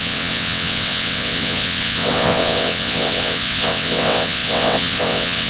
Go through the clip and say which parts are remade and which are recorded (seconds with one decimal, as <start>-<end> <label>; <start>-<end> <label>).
0.0-5.5 remade